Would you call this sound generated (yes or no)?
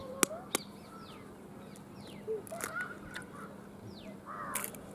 no